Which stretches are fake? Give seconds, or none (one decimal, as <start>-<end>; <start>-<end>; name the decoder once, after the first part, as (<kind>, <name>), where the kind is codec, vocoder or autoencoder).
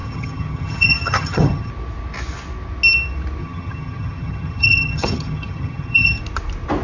0.0-1.7 (vocoder, HiFi-GAN); 3.4-6.2